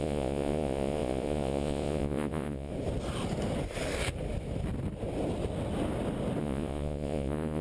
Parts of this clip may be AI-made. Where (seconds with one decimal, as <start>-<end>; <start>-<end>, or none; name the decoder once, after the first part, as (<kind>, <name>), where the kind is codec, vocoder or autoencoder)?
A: 0.0-2.7 (vocoder, Vocos); 6.4-7.6